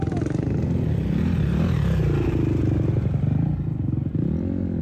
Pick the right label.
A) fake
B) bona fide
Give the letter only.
B